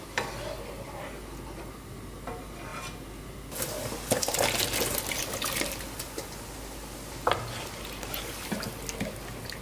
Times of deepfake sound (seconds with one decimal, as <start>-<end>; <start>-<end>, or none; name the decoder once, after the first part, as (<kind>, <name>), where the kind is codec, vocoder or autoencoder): none